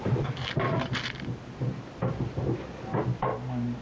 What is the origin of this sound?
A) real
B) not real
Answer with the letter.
A